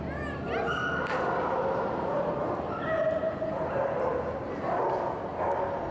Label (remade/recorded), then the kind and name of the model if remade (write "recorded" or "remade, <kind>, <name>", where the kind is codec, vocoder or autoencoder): recorded